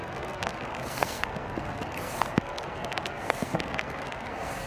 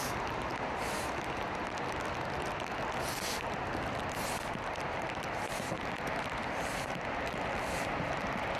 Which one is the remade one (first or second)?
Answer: first